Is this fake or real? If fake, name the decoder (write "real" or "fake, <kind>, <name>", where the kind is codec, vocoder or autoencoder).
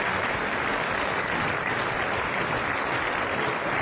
real